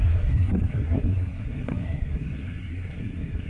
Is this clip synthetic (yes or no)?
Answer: yes